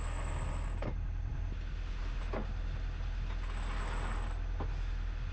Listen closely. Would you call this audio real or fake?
real